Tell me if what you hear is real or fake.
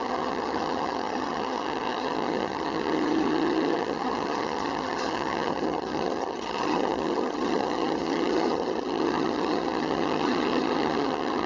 fake